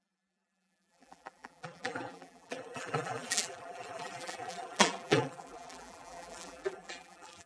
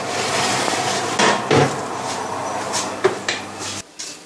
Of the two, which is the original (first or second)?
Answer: second